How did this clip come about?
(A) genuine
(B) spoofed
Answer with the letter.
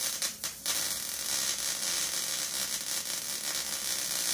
A